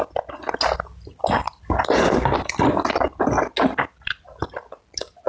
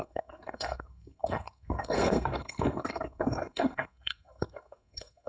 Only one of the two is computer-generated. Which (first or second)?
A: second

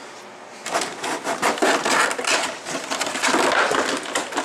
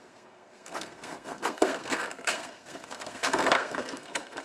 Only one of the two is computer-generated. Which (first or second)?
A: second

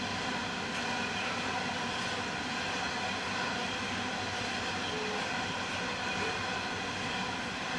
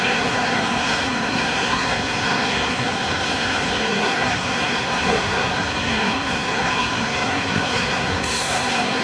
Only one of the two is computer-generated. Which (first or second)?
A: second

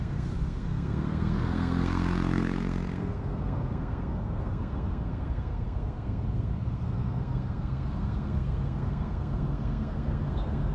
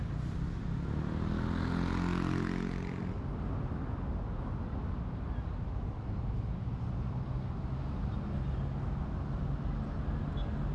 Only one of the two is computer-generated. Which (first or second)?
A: first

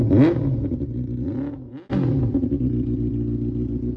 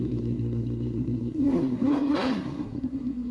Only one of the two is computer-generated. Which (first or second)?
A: second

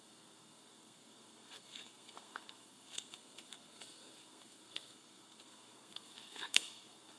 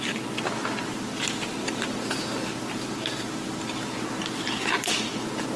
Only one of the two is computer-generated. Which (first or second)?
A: first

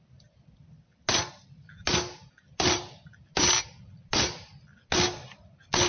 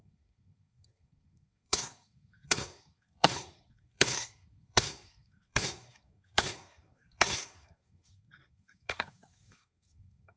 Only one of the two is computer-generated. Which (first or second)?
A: second